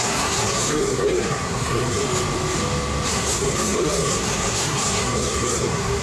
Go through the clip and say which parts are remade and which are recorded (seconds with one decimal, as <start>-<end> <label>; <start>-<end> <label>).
0.0-2.0 remade; 2.0-3.1 recorded; 3.1-6.0 remade